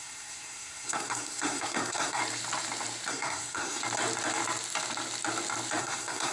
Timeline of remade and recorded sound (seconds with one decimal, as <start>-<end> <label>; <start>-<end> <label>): 0.0-2.2 remade; 2.2-3.1 recorded; 3.1-3.8 remade; 3.8-5.8 recorded; 5.8-6.3 remade